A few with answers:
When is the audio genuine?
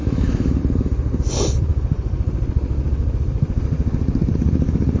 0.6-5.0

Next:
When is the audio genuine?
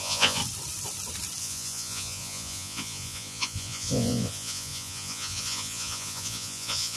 0.4-1.4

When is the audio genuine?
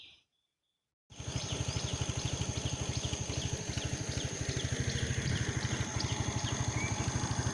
0.0-7.5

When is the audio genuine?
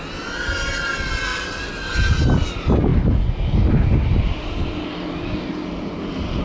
0.0-1.3; 1.9-6.4